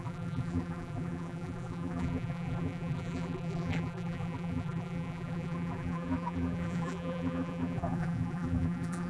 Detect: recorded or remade remade